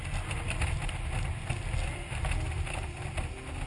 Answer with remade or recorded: recorded